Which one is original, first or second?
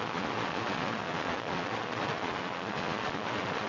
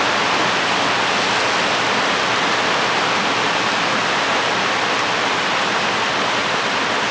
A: second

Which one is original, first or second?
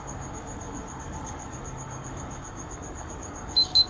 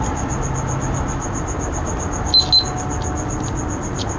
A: second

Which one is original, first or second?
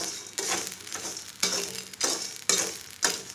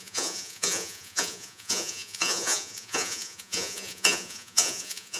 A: first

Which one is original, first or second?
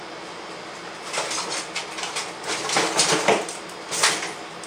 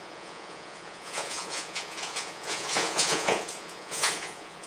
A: first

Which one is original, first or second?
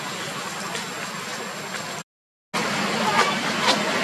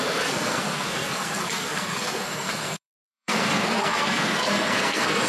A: first